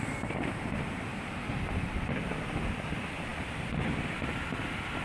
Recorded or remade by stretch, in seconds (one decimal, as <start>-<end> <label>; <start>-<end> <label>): 0.0-5.0 remade